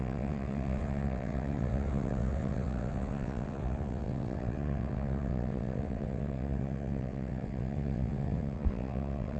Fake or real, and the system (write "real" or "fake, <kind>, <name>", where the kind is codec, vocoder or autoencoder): fake, vocoder, WaveNeXt